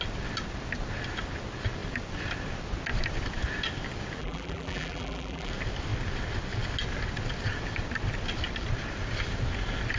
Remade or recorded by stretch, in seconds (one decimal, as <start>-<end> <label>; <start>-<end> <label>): 0.0-4.2 recorded; 4.2-5.5 remade; 5.5-10.0 recorded